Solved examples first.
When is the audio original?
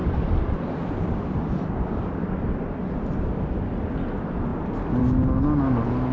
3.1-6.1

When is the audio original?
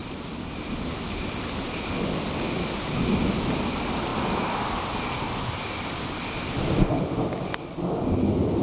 0.0-8.6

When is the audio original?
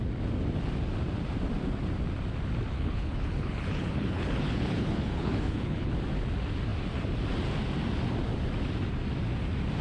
0.0-2.7; 5.9-9.8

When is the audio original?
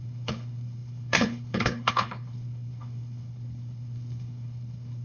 none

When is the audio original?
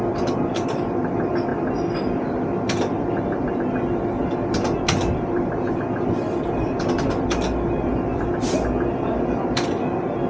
0.0-10.3